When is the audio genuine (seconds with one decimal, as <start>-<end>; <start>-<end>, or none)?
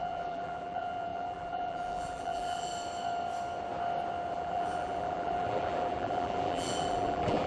2.7-4.3